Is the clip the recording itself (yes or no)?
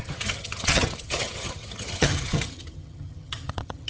no